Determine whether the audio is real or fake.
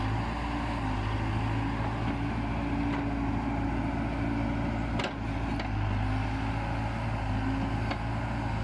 real